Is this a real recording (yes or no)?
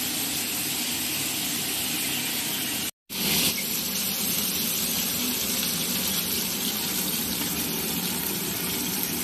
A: yes